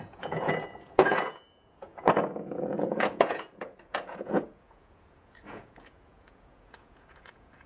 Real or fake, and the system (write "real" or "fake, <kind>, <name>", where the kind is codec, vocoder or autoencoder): fake, vocoder, Vocos